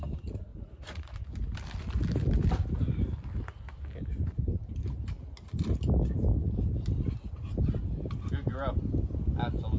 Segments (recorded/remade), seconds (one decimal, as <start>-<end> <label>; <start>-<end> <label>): 0.0-0.5 recorded; 0.5-1.2 remade; 1.2-9.8 recorded

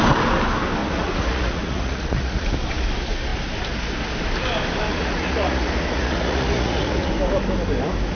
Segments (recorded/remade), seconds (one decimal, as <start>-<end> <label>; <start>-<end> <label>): 0.0-0.8 recorded; 0.8-2.5 remade; 2.5-4.9 recorded; 4.9-7.1 remade; 7.1-8.1 recorded

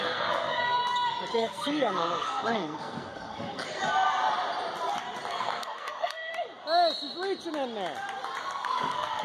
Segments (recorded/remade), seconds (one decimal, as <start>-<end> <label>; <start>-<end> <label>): 0.0-0.8 remade; 0.8-1.3 recorded; 1.3-3.8 remade; 3.8-5.3 recorded; 5.3-6.3 remade; 6.3-8.4 recorded; 8.4-9.2 remade

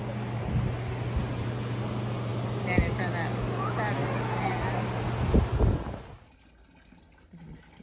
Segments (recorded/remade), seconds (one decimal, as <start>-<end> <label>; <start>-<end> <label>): 0.0-7.8 recorded

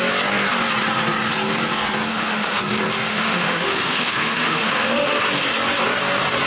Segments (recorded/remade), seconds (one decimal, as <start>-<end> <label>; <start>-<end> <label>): 0.0-2.1 recorded; 2.1-2.6 remade; 2.6-3.1 recorded; 3.1-5.2 remade; 5.2-6.5 recorded

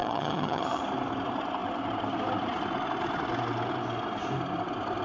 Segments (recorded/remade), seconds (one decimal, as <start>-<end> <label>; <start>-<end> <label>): 0.0-0.8 remade; 0.8-5.0 recorded

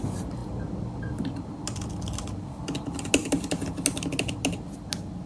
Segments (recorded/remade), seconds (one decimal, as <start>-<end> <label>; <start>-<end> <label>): 0.0-5.3 recorded